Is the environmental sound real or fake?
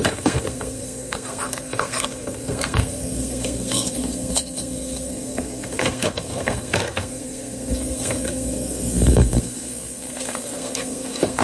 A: fake